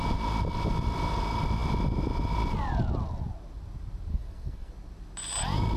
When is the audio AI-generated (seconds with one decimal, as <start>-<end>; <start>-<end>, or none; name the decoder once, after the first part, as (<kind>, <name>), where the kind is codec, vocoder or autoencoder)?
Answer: 4.1-4.7 (codec, SNAC)